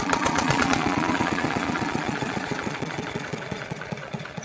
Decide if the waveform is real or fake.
fake